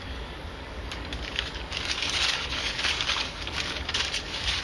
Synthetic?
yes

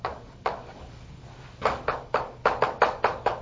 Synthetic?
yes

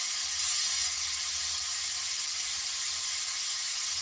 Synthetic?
no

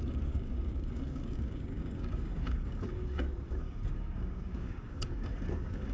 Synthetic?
yes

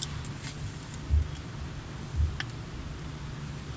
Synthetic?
no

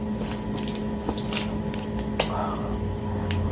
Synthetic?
no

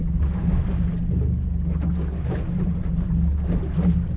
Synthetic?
no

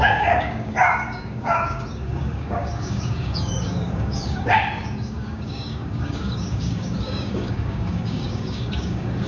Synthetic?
yes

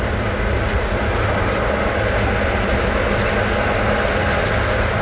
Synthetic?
no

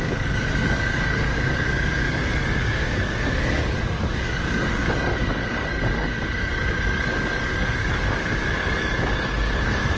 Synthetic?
yes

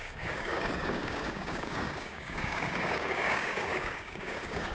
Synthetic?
yes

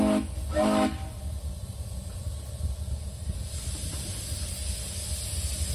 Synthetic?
no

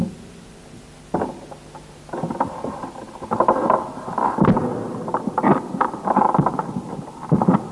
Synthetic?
no